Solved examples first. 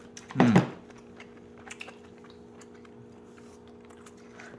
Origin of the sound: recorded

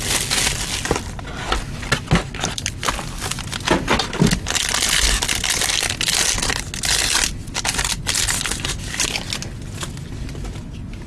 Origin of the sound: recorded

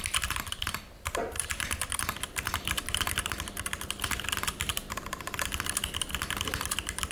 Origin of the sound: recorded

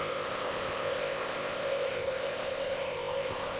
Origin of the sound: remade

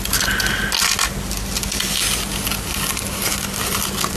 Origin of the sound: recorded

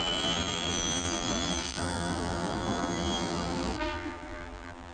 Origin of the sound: remade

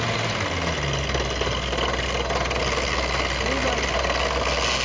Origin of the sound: recorded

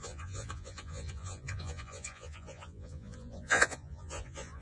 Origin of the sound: remade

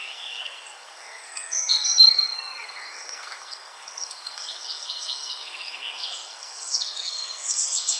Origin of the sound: remade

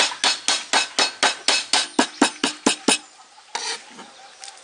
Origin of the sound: recorded